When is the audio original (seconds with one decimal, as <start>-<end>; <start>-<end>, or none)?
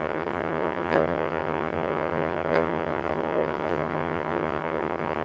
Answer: none